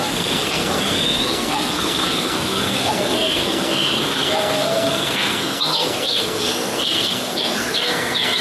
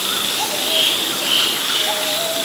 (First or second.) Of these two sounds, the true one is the second